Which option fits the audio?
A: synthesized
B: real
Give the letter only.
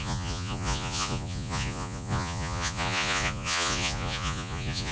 A